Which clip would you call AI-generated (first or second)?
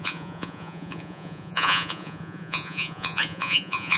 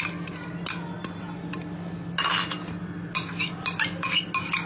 first